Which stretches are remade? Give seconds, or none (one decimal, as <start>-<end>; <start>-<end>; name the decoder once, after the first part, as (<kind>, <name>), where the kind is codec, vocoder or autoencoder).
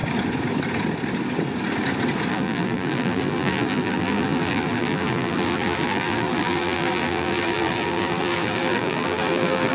2.3-9.7 (vocoder, BigVGAN v2)